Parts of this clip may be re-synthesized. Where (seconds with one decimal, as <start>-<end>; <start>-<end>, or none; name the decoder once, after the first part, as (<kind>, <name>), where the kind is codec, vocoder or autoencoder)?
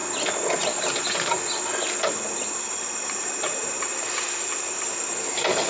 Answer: 2.6-5.7 (vocoder, BigVGAN v2)